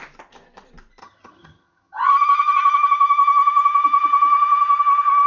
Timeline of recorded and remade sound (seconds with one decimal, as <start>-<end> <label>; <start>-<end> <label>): 0.0-1.0 recorded; 1.0-2.1 remade; 2.1-5.3 recorded